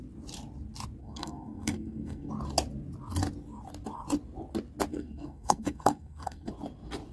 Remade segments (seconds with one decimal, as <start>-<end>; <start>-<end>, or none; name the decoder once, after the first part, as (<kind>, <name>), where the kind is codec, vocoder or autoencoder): 1.0-2.3 (codec, SNAC); 4.9-6.5

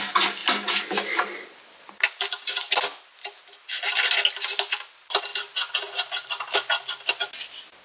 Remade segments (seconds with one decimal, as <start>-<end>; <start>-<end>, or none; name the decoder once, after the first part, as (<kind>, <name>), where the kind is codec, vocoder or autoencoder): none

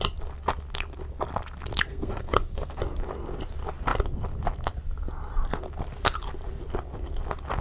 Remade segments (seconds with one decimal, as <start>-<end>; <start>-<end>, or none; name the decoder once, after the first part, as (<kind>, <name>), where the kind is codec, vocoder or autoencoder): 1.9-2.8 (codec, SNAC)

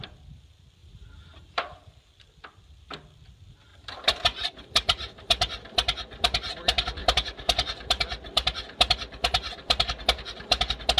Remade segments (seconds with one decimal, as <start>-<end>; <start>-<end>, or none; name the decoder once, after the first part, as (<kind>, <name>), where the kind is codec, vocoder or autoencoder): 0.8-1.8 (vocoder, BigVGAN v2); 3.7-5.2; 7.0-7.9